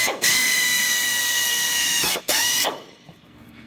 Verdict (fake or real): fake